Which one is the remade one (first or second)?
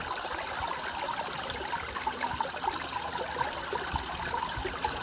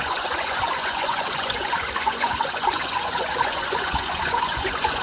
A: second